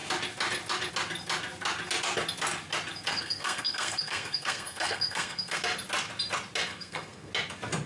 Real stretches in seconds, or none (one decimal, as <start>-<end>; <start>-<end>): 0.0-3.1; 5.6-6.7; 7.3-7.9